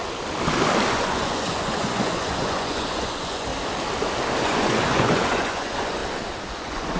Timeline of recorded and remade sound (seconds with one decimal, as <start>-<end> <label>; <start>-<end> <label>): 0.0-0.9 recorded; 0.9-3.5 remade; 3.5-4.4 recorded; 4.4-6.0 remade; 6.0-6.5 recorded; 6.5-7.0 remade